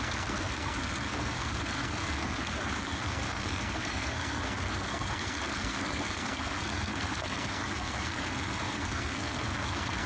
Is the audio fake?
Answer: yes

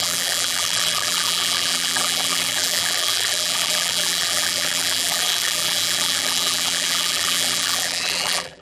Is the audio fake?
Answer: yes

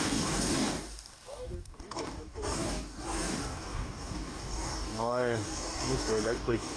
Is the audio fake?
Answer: yes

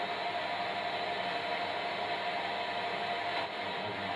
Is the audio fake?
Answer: no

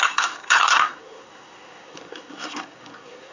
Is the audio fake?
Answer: yes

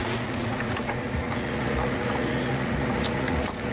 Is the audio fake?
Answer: yes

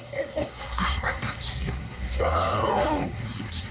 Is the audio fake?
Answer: yes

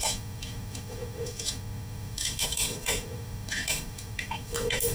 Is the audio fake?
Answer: yes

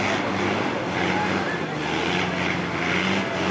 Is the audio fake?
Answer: no